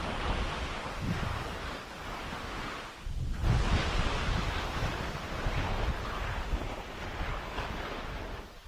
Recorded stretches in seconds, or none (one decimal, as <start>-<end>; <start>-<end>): 0.0-1.3; 1.9-7.3; 7.9-8.7